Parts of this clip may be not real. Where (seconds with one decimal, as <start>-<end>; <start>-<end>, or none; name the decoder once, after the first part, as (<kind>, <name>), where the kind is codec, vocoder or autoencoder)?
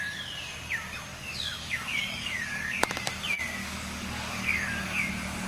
1.1-3.1 (codec, DAC); 3.6-5.1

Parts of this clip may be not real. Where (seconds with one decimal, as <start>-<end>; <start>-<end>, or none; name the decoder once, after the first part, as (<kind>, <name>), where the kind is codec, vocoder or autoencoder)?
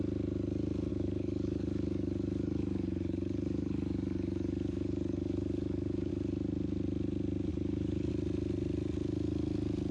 0.9-6.1 (codec, DAC); 7.5-8.1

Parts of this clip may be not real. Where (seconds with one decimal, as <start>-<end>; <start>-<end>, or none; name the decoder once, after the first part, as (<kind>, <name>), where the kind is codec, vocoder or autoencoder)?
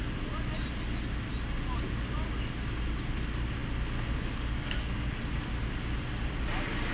4.5-5.1 (codec, DAC)